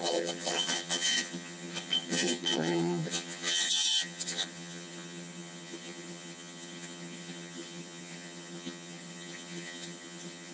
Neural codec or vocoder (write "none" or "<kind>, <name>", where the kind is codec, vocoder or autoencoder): vocoder, HiFi-GAN